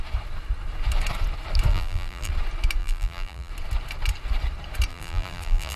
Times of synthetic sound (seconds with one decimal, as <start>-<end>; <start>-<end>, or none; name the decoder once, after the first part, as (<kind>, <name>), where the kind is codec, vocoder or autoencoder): 1.7-2.3 (vocoder, BigVGAN v2); 2.8-3.5; 4.9-5.8